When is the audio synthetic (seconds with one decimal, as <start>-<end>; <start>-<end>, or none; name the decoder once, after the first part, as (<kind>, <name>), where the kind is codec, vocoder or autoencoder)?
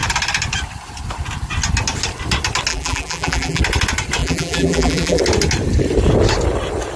2.7-3.6 (vocoder, BigVGAN v2); 4.2-5.2